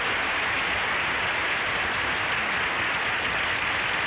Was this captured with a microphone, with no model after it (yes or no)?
yes